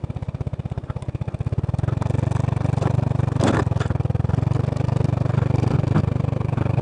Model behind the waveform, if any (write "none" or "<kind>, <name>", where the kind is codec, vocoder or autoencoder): none